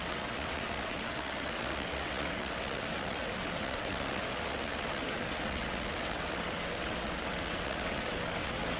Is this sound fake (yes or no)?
yes